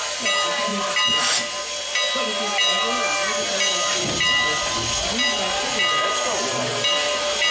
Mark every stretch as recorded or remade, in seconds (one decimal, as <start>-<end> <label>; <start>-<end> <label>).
0.0-7.5 recorded